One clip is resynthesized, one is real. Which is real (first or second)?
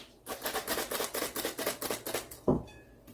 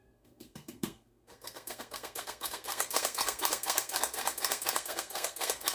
first